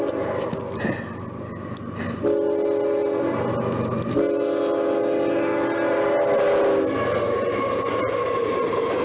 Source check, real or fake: real